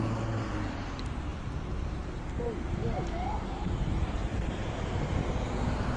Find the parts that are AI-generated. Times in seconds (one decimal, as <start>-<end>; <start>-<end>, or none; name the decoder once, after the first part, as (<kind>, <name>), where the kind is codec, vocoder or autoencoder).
2.8-5.0 (vocoder, BigVGAN v2)